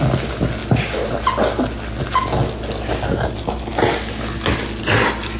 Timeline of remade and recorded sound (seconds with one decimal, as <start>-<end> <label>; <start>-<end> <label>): 0.0-5.4 recorded